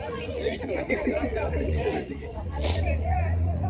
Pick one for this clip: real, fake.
fake